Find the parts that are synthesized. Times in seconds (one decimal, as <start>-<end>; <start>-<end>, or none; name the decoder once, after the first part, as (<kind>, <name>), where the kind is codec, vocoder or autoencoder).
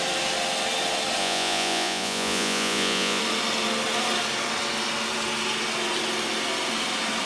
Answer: 1.2-3.2 (vocoder, Vocos)